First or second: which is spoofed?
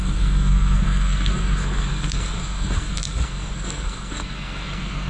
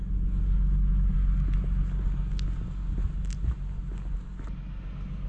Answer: first